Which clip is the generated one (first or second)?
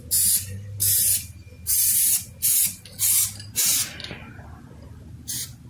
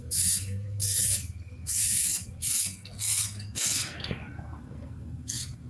second